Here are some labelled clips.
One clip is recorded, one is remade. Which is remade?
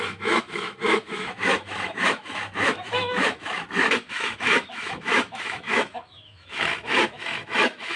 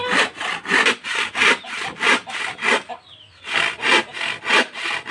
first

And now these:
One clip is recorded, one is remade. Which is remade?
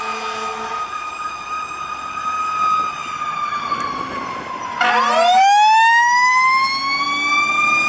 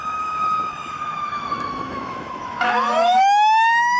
second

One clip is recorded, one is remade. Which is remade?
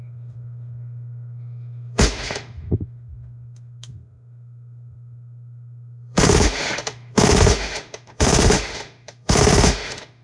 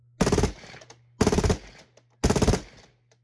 first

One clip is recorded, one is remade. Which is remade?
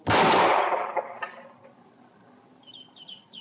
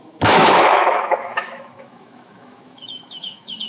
second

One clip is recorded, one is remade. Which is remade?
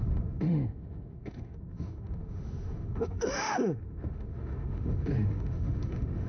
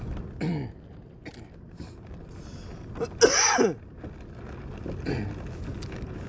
first